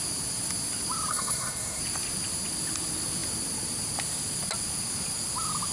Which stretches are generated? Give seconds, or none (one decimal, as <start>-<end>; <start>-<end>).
1.1-1.8